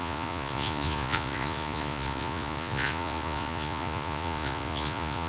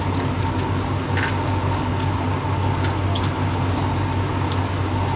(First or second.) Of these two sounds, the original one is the second